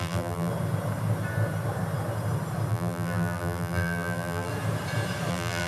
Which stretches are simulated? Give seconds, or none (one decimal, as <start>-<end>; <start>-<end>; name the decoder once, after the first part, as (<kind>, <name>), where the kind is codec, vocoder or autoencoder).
0.0-0.5 (vocoder, BigVGAN v2); 2.7-4.5; 5.3-5.7